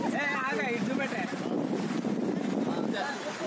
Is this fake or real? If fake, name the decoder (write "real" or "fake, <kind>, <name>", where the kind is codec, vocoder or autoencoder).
real